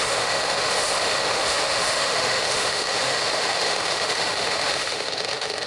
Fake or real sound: fake